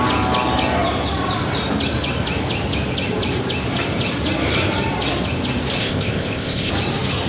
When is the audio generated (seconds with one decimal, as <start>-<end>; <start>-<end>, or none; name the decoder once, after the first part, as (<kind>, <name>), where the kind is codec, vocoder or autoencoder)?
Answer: 5.8-6.7 (codec, ZipCodec)